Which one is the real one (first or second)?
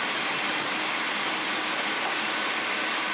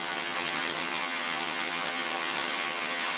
first